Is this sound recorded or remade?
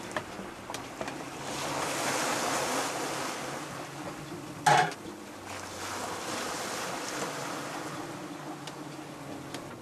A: recorded